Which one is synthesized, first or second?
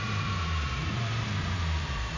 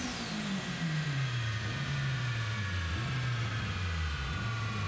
first